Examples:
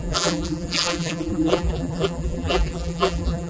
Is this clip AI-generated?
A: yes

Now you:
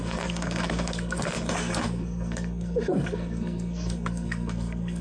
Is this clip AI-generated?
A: yes